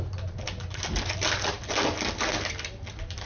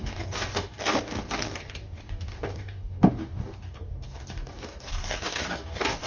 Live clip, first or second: first